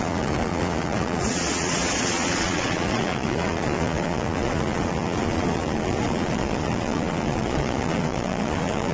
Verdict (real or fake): fake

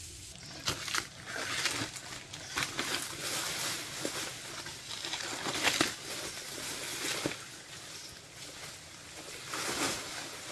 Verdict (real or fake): real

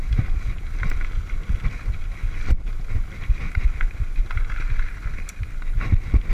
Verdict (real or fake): real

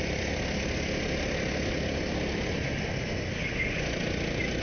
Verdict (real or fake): real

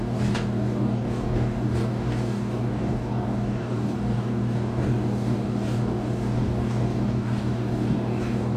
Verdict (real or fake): fake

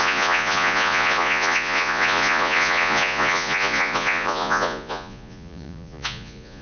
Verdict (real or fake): fake